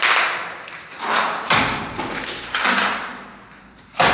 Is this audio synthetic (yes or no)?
yes